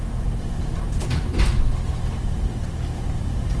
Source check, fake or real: real